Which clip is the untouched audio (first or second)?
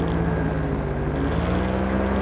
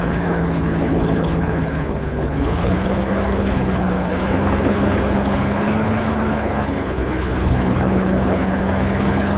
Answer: first